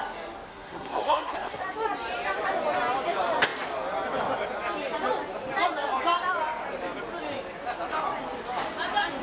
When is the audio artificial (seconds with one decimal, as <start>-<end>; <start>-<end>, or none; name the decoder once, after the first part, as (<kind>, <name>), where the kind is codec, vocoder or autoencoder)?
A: 0.5-1.6 (codec, SNAC)